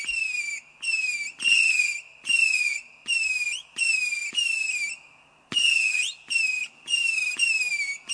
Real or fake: real